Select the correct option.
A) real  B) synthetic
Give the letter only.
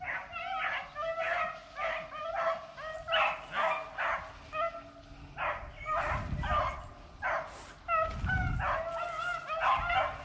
A